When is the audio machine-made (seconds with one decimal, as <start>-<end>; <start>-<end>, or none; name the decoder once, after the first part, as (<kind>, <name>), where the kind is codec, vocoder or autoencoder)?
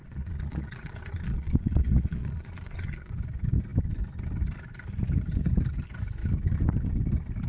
0.0-3.1 (vocoder, Vocos)